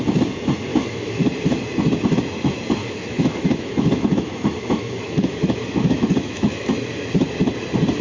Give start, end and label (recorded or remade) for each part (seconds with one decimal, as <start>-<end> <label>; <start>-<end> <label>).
0.0-0.7 recorded; 0.7-1.2 remade; 1.2-2.8 recorded; 2.8-6.7 remade; 6.7-8.0 recorded